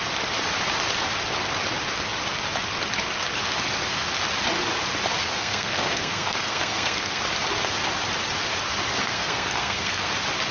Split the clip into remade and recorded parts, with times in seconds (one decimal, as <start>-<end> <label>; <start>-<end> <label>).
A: 0.0-5.2 recorded; 5.2-7.2 remade; 7.2-9.0 recorded; 9.0-10.1 remade; 10.1-10.5 recorded

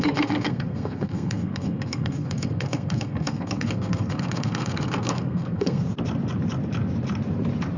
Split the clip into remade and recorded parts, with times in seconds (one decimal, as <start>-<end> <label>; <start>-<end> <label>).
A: 0.0-5.8 remade; 5.8-7.8 recorded

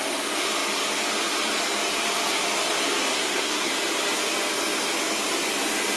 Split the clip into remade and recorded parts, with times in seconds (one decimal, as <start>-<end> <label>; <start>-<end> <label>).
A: 0.0-3.1 recorded; 3.1-3.7 remade; 3.7-6.0 recorded

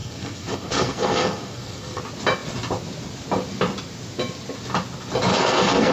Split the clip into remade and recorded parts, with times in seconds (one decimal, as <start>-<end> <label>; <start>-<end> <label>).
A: 0.0-2.0 remade; 2.0-5.3 recorded; 5.3-5.9 remade